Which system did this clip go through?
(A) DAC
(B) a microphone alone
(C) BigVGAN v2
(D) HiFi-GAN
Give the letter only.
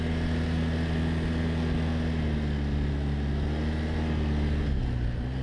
B